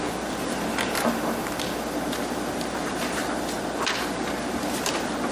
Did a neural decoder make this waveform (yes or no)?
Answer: no